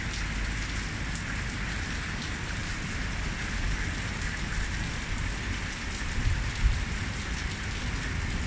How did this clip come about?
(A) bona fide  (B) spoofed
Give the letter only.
A